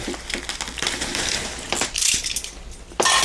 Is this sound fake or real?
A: real